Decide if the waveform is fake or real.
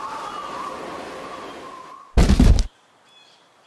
real